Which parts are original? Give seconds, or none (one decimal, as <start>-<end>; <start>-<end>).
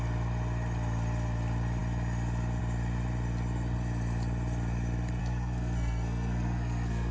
0.0-5.2